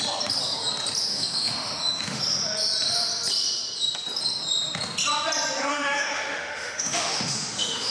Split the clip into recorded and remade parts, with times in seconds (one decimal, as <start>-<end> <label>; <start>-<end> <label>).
0.0-1.1 recorded; 1.1-2.2 remade; 2.2-5.7 recorded; 5.7-7.9 remade